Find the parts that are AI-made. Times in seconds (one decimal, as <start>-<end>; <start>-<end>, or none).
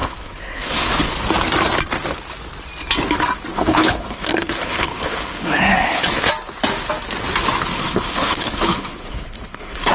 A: 0.0-1.1; 3.5-6.3; 7.7-9.9